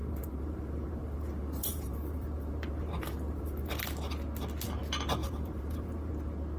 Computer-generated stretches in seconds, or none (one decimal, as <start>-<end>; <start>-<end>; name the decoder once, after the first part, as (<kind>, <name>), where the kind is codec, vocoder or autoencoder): 0.0-3.7 (vocoder, BigVGAN v2); 5.2-6.1